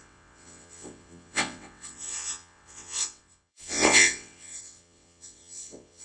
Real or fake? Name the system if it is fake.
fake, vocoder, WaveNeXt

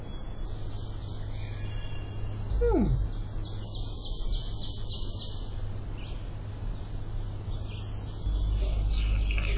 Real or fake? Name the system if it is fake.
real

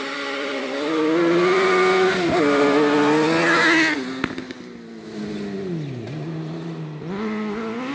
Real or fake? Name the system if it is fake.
real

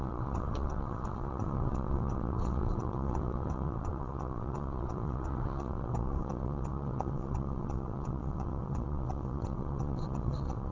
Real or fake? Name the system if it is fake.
fake, vocoder, WaveNeXt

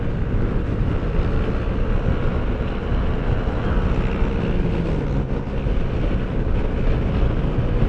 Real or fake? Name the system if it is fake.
real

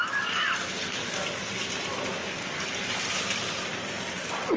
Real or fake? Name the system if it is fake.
real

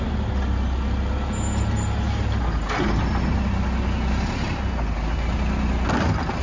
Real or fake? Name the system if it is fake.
real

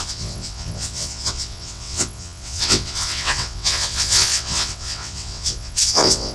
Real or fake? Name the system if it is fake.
fake, vocoder, WaveNeXt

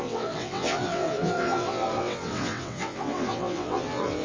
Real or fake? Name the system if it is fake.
fake, vocoder, WaveNeXt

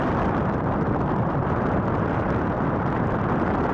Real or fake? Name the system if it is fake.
real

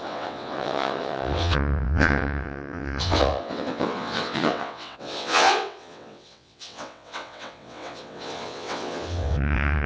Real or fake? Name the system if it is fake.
fake, vocoder, WaveNeXt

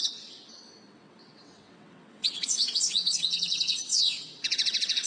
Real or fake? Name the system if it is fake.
fake, vocoder, WaveNeXt